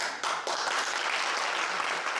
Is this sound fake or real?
real